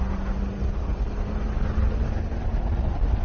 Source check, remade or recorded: recorded